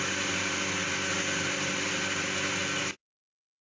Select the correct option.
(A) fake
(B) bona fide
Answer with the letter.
B